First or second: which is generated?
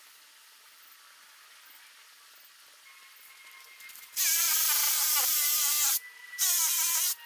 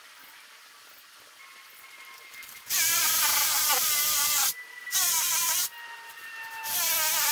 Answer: second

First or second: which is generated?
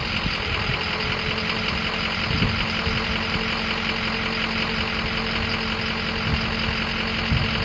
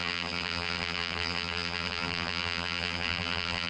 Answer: second